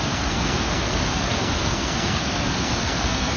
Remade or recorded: remade